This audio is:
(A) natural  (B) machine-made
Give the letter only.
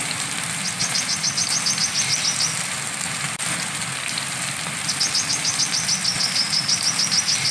A